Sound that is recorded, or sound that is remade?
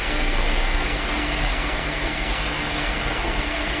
remade